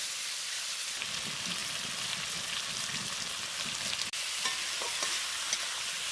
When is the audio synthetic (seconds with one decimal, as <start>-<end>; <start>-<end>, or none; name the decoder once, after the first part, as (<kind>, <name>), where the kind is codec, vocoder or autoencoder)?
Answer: none